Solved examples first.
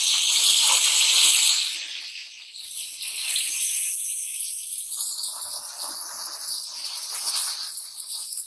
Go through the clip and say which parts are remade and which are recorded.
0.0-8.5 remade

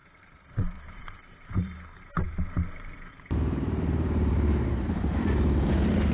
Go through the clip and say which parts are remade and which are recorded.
0.0-6.1 remade

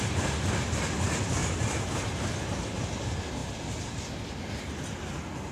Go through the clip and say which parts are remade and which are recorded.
0.0-1.4 recorded; 1.4-3.0 remade; 3.0-5.5 recorded

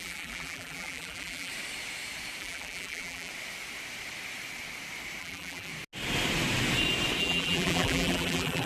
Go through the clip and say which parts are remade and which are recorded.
0.0-1.5 remade; 1.5-2.4 recorded; 2.4-3.3 remade; 3.3-5.2 recorded; 5.2-5.7 remade; 5.7-7.2 recorded; 7.2-8.7 remade

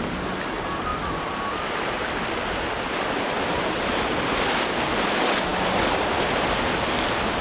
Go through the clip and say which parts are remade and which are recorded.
0.0-7.4 recorded

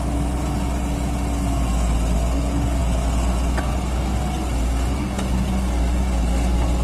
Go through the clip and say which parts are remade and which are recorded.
0.0-6.8 recorded

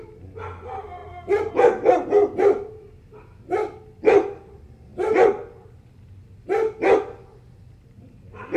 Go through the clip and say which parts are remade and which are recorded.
0.0-1.0 recorded; 1.0-1.5 remade; 1.5-8.6 recorded

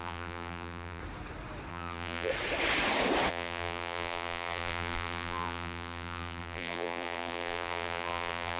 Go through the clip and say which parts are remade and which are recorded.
0.0-1.0 remade; 1.0-1.7 recorded; 1.7-2.3 remade; 2.3-3.3 recorded; 3.3-8.6 remade